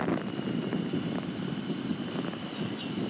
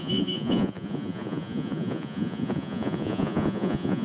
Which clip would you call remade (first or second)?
second